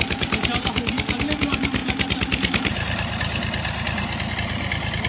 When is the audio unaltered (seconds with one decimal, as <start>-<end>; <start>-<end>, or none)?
0.0-5.1